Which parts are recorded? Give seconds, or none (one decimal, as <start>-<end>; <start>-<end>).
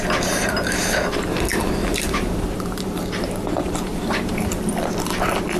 0.0-1.9; 3.0-3.9; 4.6-5.6